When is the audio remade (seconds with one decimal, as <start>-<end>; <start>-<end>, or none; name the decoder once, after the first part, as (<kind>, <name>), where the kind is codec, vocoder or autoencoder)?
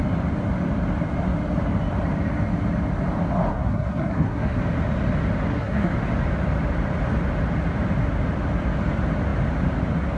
3.5-4.6 (codec, SNAC); 5.5-6.0